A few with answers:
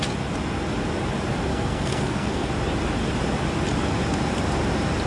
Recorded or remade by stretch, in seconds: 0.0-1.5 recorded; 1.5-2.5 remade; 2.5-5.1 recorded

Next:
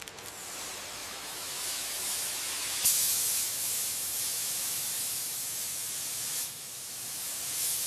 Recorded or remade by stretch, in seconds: 0.0-1.0 recorded; 1.0-5.4 remade; 5.4-6.4 recorded; 6.4-7.3 remade; 7.3-7.9 recorded

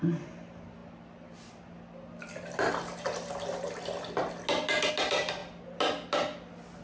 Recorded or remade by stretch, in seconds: 0.0-6.8 recorded